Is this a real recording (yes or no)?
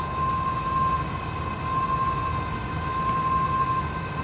yes